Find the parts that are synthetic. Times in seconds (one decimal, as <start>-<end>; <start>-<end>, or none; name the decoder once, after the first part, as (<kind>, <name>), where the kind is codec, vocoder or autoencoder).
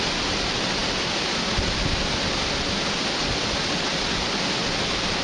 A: none